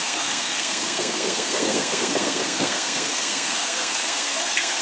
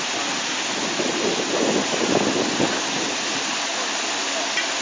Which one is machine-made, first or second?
first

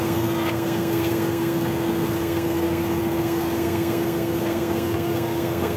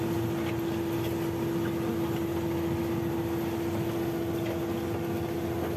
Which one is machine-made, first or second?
first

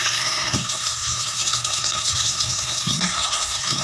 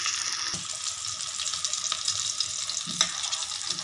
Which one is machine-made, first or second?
first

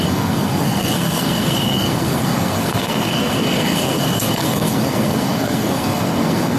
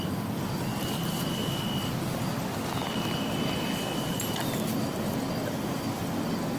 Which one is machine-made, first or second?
first